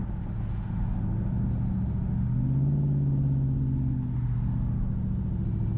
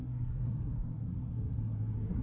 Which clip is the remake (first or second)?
second